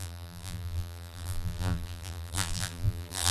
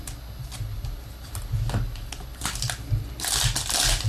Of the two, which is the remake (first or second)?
first